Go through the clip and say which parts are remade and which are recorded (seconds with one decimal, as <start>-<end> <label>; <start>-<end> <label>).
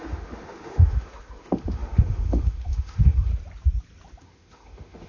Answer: 0.0-3.3 remade; 3.3-4.2 recorded; 4.2-5.1 remade